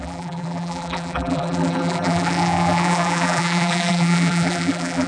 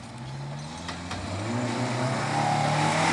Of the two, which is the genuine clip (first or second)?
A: second